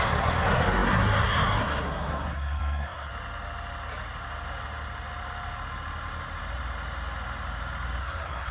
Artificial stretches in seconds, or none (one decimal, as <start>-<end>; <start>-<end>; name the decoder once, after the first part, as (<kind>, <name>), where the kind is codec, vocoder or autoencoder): 0.0-3.1 (codec, SNAC); 8.0-8.5